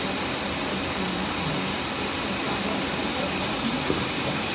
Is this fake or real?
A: real